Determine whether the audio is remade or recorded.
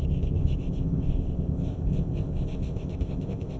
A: remade